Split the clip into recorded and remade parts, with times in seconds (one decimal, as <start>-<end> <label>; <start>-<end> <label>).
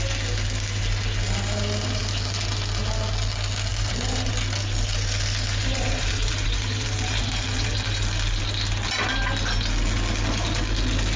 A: 0.0-3.7 recorded; 3.7-4.3 remade; 4.3-5.6 recorded; 5.6-7.7 remade; 7.7-11.2 recorded